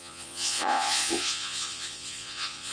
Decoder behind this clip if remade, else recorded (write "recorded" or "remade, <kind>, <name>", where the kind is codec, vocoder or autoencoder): remade, vocoder, Vocos